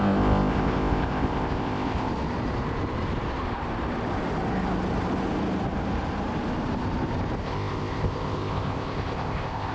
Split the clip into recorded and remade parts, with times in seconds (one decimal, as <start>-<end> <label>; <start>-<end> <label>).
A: 0.0-2.1 remade; 2.1-7.4 recorded; 7.4-9.7 remade